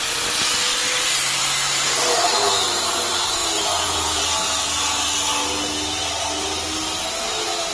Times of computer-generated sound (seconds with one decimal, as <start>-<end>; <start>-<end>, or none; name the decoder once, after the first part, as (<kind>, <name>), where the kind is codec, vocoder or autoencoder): 3.4-4.2 (vocoder, Vocos)